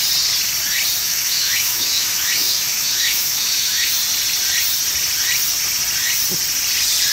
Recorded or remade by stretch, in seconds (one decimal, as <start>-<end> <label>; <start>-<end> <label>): 0.0-1.0 recorded; 1.0-3.9 remade; 3.9-7.1 recorded